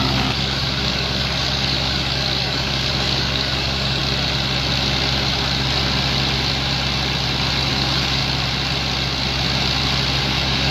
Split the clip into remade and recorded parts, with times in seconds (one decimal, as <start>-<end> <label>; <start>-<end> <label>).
0.0-4.0 remade; 4.0-7.7 recorded; 7.7-8.2 remade; 8.2-10.2 recorded; 10.2-10.7 remade